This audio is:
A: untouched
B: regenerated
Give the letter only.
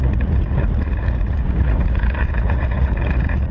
B